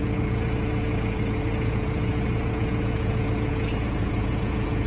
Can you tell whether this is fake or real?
fake